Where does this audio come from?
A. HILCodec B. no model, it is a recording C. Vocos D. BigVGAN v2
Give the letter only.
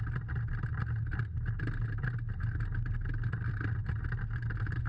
B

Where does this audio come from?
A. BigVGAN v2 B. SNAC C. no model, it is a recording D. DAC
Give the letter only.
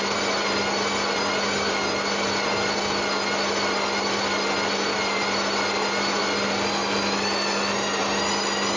C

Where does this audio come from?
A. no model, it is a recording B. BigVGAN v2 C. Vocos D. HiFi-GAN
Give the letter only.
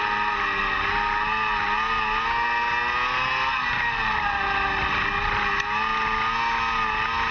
A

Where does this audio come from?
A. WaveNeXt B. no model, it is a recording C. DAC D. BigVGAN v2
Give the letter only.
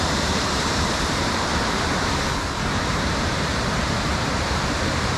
D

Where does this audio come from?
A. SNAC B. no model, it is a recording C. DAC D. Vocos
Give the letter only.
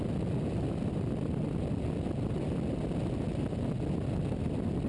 B